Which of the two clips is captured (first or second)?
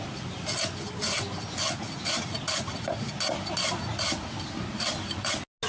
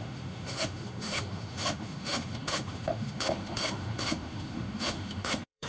first